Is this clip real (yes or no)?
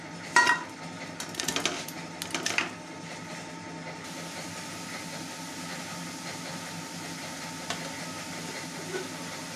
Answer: yes